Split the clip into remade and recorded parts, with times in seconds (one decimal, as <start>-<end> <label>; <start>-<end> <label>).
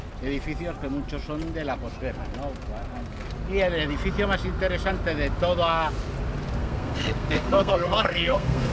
0.0-6.6 recorded; 6.6-8.7 remade